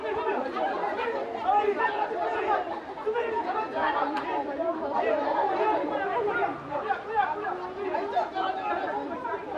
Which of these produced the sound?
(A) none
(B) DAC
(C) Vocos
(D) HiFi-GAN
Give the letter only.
A